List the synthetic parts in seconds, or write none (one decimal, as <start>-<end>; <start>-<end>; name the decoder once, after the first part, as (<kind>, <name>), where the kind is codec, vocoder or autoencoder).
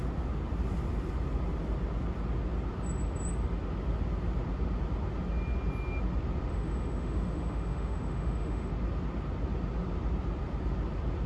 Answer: 6.5-8.7 (autoencoder, DAC-VAE)